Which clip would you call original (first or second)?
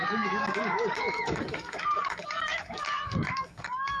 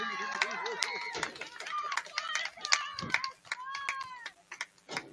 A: second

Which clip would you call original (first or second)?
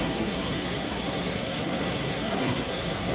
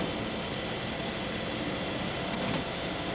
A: second